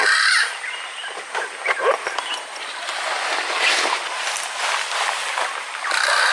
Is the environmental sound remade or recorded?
recorded